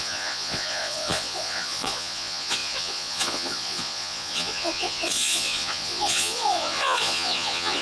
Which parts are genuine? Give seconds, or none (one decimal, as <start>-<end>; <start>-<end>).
none